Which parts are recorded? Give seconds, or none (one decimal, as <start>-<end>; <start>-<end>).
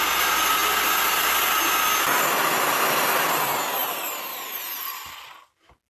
0.0-3.8; 4.8-5.9